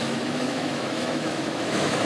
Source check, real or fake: fake